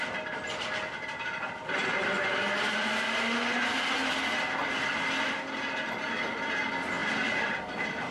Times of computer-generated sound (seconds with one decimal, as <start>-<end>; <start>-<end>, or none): 7.0-7.6